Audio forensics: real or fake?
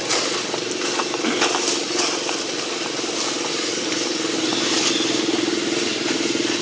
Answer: real